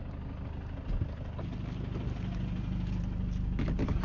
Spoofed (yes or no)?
no